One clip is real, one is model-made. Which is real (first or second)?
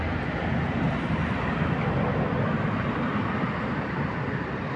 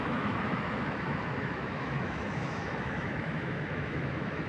first